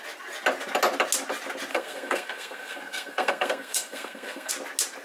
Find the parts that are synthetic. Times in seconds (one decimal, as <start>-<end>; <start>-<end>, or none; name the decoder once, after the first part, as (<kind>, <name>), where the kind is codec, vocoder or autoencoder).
1.7-4.5 (codec, SNAC)